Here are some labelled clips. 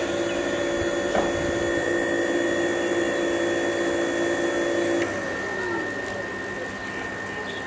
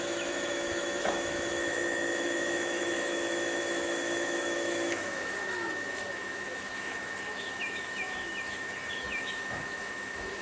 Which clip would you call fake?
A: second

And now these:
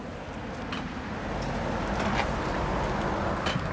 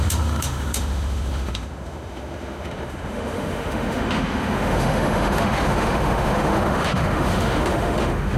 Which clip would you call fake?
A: second